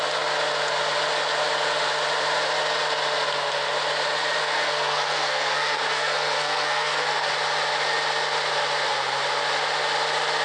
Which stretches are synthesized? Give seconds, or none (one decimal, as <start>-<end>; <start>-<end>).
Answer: 4.4-7.3